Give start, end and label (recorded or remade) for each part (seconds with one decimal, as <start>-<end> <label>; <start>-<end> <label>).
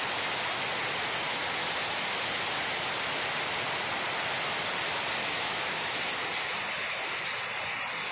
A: 0.0-5.2 recorded; 5.2-6.0 remade; 6.0-8.1 recorded